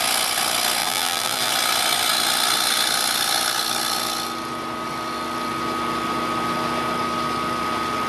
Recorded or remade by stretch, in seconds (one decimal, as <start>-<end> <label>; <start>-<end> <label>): 0.0-0.8 recorded; 0.8-1.5 remade; 1.5-8.1 recorded